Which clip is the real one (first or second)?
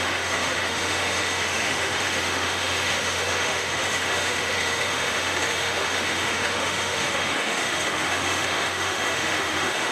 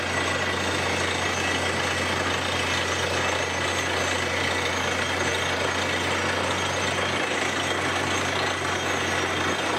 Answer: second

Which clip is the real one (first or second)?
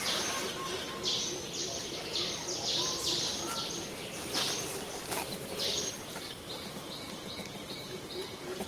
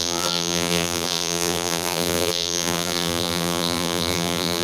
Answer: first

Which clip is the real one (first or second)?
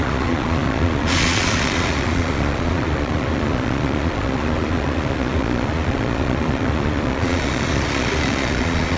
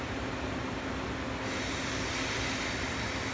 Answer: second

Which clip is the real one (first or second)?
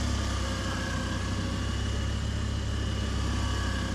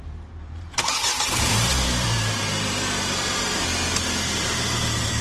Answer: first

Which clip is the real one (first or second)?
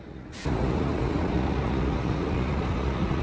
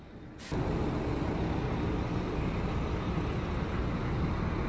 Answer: second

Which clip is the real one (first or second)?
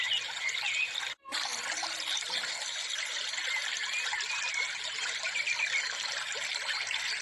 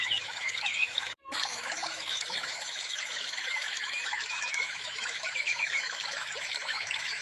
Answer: first